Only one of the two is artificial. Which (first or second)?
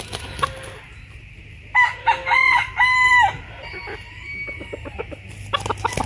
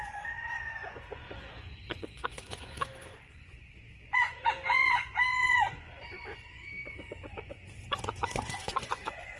second